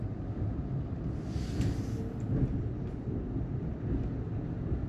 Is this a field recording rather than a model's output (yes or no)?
yes